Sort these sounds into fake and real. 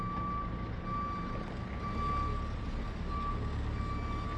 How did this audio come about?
real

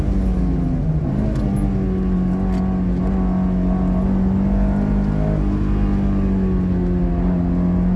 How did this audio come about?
real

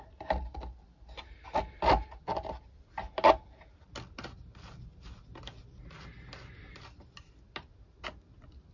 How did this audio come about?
real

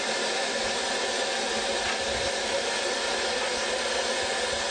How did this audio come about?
real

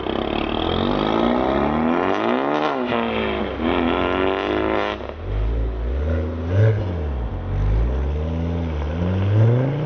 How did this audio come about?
real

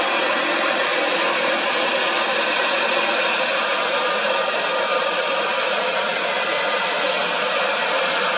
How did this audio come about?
real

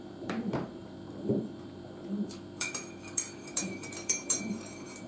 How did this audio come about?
fake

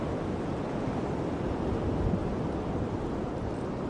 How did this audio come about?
real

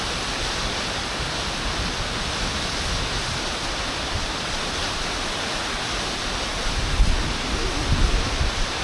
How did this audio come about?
real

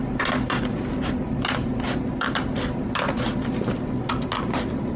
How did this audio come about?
real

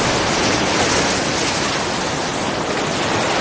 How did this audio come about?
real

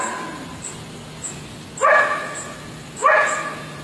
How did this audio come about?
real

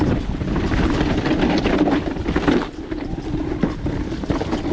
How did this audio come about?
fake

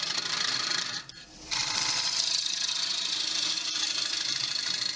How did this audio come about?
fake